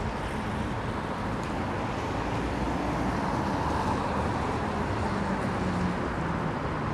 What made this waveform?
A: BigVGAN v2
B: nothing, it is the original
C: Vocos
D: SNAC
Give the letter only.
B